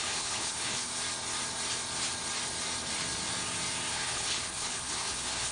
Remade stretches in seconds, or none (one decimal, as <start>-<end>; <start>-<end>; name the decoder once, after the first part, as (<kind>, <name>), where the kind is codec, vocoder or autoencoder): 0.0-0.9 (codec, HILCodec); 3.9-5.5